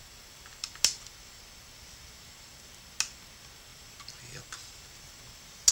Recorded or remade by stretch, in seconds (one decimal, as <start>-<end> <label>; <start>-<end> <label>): 0.0-5.7 recorded